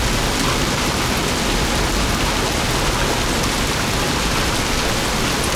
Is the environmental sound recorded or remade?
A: recorded